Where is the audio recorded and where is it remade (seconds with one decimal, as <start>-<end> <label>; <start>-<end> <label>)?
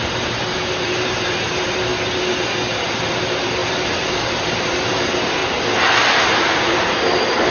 0.0-1.9 remade; 1.9-2.9 recorded; 2.9-5.4 remade; 5.4-6.2 recorded; 6.2-7.5 remade